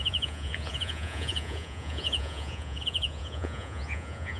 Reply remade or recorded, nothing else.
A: remade